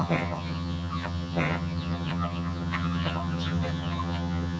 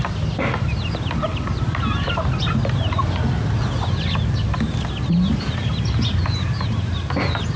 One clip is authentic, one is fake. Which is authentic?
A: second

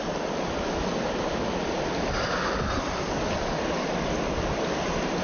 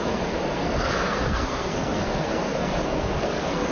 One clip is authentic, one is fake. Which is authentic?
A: first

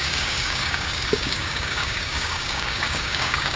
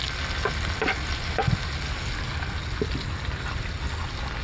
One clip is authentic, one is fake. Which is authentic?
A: second